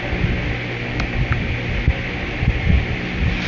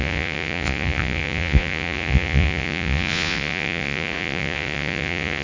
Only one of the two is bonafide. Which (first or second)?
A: first